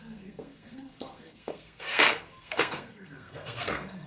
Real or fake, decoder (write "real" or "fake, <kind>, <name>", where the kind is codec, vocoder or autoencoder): fake, codec, SNAC